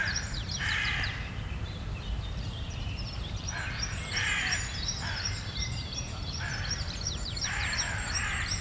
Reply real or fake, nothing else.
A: fake